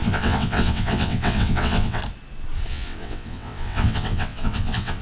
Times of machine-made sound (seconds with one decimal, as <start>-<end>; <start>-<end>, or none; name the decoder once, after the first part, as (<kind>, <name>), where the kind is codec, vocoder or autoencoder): 0.0-2.0 (vocoder, WaveNeXt); 2.7-5.0